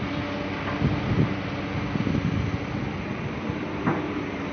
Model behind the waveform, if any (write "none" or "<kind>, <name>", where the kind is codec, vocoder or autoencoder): none